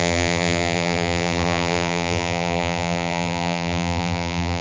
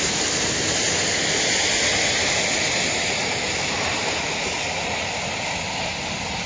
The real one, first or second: second